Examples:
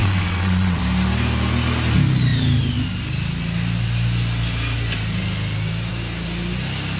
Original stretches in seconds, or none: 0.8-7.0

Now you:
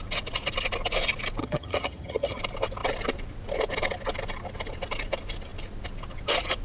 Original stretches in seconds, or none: 0.0-1.4; 2.4-6.6

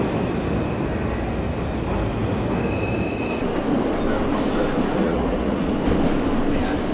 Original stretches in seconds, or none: 0.0-5.0; 5.7-6.9

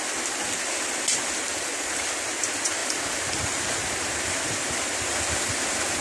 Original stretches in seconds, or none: 0.0-6.0

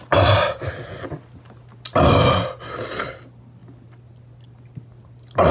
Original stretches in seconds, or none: 0.0-5.5